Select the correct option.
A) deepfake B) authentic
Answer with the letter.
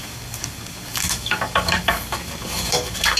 A